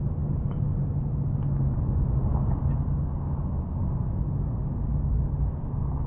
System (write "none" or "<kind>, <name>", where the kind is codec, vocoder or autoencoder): none